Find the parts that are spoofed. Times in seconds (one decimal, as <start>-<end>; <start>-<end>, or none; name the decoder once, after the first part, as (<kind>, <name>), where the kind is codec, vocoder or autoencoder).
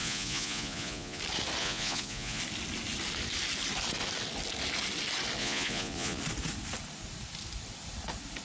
0.0-1.2 (vocoder, Vocos); 1.6-2.4; 5.4-6.2